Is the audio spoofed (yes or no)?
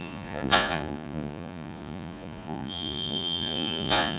yes